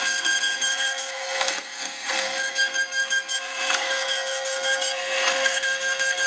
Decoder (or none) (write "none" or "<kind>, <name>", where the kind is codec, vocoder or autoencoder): codec, SNAC